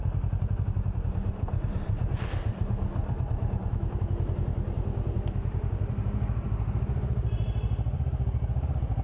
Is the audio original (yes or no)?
no